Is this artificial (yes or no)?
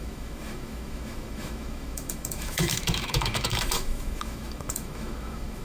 yes